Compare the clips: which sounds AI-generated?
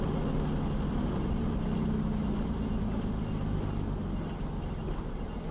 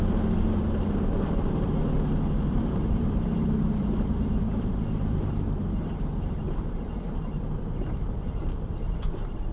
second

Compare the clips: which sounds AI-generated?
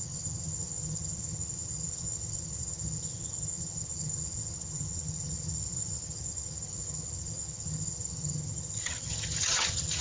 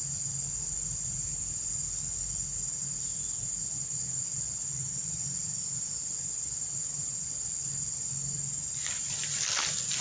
first